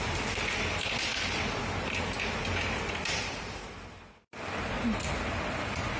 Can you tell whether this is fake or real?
fake